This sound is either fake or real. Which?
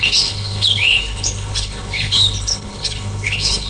fake